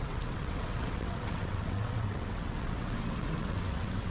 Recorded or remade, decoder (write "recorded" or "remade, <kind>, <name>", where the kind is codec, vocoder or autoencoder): remade, vocoder, WaveNeXt